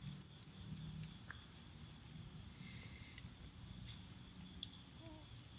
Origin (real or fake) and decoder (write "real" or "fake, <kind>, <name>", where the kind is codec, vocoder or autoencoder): real